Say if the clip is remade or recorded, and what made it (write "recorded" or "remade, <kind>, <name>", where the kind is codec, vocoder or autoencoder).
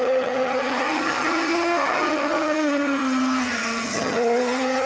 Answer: remade, vocoder, HiFi-GAN